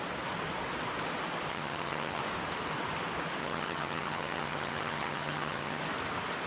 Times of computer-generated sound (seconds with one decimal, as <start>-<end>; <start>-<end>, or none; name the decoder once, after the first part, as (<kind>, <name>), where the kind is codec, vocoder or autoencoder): 1.5-2.2 (vocoder, HiFi-GAN); 3.4-5.8

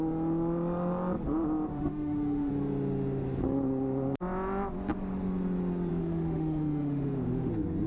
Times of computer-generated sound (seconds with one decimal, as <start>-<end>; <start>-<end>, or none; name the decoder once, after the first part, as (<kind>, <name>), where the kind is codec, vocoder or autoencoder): 1.7-2.5 (autoencoder, DAC-VAE); 5.9-7.5

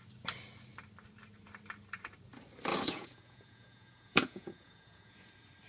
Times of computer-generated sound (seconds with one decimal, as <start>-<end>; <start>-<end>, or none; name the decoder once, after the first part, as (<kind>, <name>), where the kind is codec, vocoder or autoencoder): 2.7-5.3 (vocoder, Vocos)

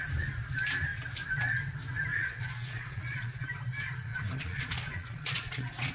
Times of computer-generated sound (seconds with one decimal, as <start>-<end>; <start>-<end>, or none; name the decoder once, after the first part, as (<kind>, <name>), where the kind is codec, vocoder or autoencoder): 2.1-3.3 (vocoder, Vocos); 4.1-5.9